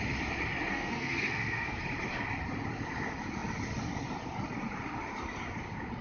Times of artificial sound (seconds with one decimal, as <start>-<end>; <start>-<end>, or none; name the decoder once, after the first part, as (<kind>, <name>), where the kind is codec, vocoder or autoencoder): 0.7-1.8 (codec, SNAC)